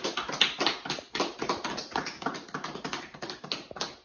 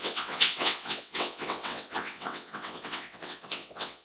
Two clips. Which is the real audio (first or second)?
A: first